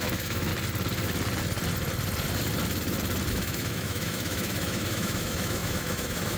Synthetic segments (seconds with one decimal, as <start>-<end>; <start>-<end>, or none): 0.0-0.5; 3.3-6.4

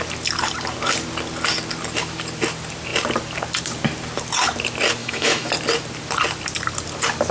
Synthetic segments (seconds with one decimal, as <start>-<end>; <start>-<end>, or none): 5.0-5.5

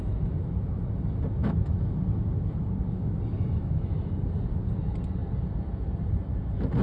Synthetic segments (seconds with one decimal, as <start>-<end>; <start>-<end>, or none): 1.4-1.9; 3.3-4.1

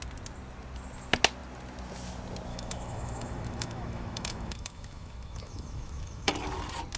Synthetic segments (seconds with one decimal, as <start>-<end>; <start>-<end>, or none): 2.5-6.3

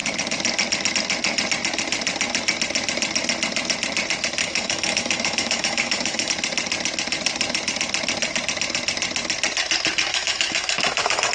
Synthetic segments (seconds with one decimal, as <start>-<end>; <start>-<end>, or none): 4.4-6.3; 10.1-11.3

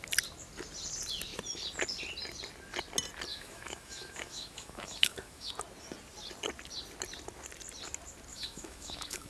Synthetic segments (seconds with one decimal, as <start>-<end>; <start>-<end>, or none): 3.3-5.5; 8.3-9.3

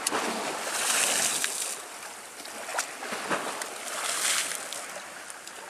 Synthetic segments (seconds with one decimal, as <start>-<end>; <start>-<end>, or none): none

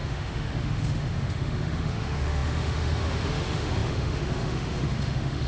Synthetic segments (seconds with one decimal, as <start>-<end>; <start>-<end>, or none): 0.0-5.5